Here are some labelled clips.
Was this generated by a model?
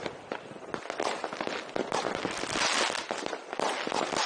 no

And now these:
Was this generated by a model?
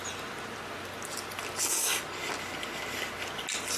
no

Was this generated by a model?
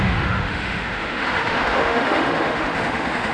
yes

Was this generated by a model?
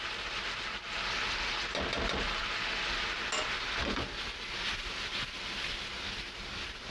no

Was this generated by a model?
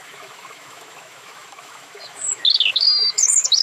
yes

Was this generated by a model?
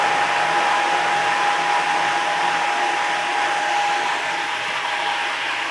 no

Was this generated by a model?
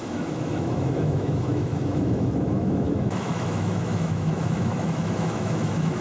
yes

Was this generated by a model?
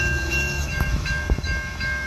yes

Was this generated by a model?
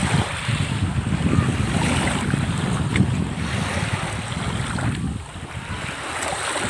no